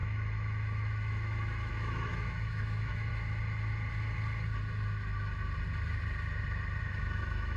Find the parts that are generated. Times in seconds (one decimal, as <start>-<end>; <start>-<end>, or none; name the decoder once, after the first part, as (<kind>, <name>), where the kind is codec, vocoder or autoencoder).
0.0-3.1 (autoencoder, DAC-VAE); 6.8-7.6